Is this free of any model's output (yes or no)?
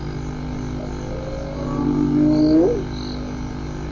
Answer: yes